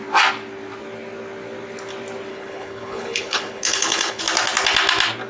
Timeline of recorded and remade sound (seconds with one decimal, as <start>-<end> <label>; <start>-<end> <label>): 0.0-2.3 recorded; 2.3-4.2 remade; 4.2-5.3 recorded